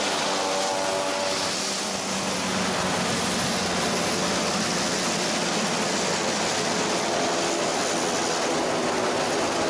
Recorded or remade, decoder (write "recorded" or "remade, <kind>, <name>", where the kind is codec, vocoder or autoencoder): recorded